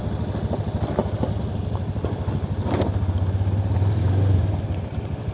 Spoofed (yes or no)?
no